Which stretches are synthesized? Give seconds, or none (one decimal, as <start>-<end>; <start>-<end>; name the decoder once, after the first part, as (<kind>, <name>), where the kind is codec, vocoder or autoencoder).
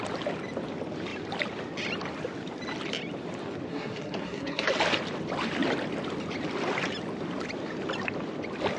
3.7-4.7 (codec, SNAC)